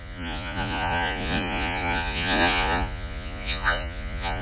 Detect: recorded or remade remade